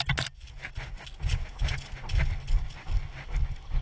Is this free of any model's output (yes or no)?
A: yes